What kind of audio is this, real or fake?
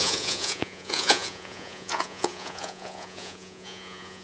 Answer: fake